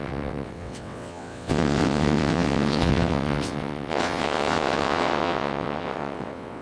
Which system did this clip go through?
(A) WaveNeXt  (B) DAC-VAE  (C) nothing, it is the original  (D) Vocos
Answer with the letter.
A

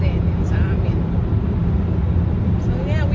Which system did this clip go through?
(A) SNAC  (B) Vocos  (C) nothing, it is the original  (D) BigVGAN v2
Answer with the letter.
C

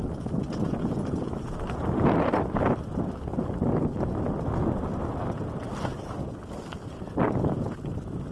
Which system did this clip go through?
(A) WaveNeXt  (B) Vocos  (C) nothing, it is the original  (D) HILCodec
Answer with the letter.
C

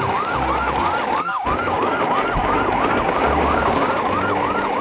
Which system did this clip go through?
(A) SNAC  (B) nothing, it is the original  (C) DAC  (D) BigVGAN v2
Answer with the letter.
C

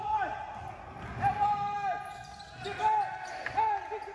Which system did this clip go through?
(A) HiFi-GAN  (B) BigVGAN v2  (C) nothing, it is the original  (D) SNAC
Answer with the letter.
C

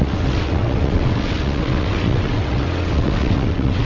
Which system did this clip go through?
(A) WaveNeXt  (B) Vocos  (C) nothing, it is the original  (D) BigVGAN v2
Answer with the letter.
A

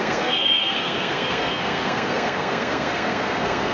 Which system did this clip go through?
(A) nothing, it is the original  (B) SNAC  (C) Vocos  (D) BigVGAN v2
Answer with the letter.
B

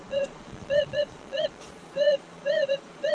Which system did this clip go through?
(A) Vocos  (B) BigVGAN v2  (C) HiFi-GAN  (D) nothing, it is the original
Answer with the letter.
A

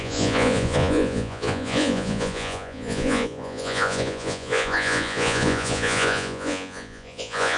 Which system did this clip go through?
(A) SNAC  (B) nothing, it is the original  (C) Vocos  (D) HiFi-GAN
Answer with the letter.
C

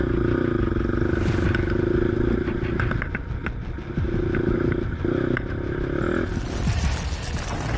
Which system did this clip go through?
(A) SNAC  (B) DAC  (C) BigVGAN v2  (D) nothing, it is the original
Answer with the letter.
D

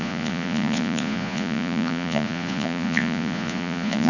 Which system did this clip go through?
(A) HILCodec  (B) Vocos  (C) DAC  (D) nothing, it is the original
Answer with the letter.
B